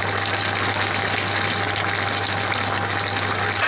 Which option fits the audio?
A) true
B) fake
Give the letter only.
A